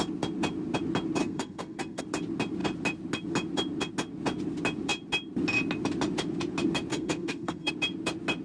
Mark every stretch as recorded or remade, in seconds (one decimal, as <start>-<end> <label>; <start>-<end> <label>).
0.0-1.2 recorded; 1.2-2.0 remade; 2.0-6.9 recorded; 6.9-7.7 remade; 7.7-8.4 recorded